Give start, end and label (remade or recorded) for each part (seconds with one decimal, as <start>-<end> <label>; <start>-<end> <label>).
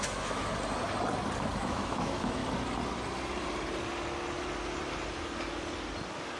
0.0-0.5 remade; 0.5-1.4 recorded; 1.4-2.4 remade; 2.4-6.4 recorded